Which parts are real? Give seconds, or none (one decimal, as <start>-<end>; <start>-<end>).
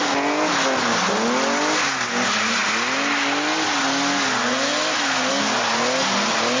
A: 0.0-6.6